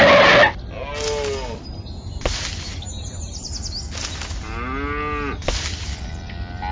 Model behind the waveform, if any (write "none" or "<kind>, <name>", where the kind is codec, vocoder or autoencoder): none